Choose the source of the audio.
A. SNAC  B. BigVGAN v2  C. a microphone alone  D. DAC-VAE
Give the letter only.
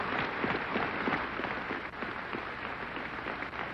C